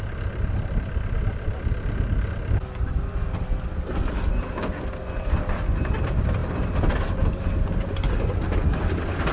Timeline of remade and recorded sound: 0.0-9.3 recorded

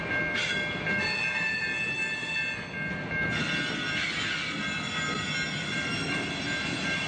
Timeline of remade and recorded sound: 0.0-7.1 recorded

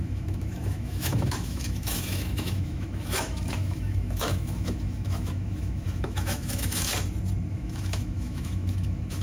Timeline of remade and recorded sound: 0.0-6.9 remade; 6.9-7.5 recorded; 7.5-9.2 remade

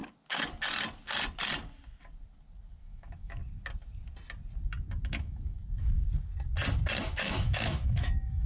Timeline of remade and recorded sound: 0.0-2.8 recorded; 2.8-3.4 remade; 3.4-5.1 recorded; 5.1-5.6 remade; 5.6-7.0 recorded; 7.0-8.5 remade

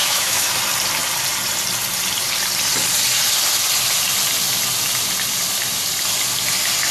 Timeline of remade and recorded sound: 0.0-0.5 remade; 0.5-6.9 recorded

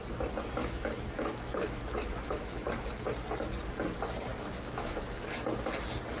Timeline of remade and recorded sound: 0.0-0.6 recorded; 0.6-3.0 remade; 3.0-4.3 recorded; 4.3-5.4 remade; 5.4-6.2 recorded

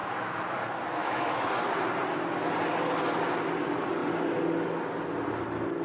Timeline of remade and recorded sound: 0.0-0.6 remade; 0.6-1.0 recorded; 1.0-1.5 remade; 1.5-5.8 recorded

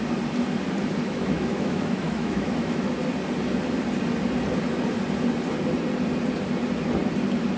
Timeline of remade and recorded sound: 0.0-1.0 recorded; 1.0-3.0 remade; 3.0-7.6 recorded